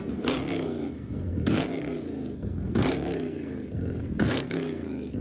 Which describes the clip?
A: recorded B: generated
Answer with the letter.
B